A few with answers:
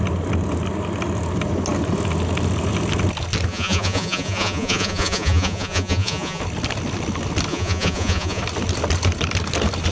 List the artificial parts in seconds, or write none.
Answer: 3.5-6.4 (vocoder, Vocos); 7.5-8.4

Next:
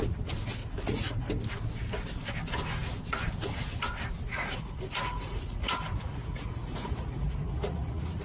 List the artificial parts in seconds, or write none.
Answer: 0.6-1.3 (vocoder, Vocos); 4.3-8.2

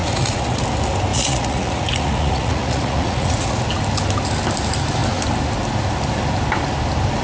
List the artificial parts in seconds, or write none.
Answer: 0.0-0.6 (vocoder, Vocos); 1.1-3.6

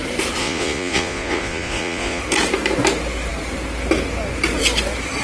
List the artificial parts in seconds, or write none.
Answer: 0.4-2.2 (vocoder, Vocos)

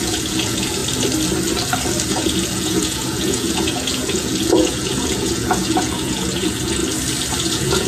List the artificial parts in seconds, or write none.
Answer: 0.0-0.8 (vocoder, Vocos); 2.1-6.8; 7.4-7.9

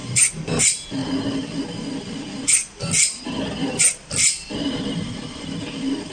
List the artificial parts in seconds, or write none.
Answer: none

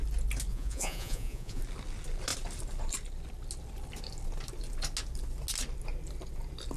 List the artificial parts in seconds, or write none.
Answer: 0.5-1.6 (vocoder, Vocos)